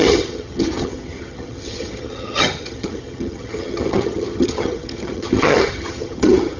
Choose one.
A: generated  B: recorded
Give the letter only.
A